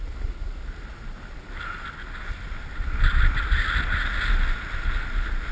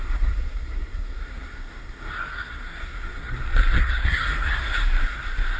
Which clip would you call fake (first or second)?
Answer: second